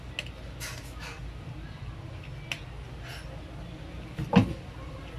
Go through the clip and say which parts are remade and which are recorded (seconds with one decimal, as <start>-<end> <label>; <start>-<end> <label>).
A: 0.0-5.2 recorded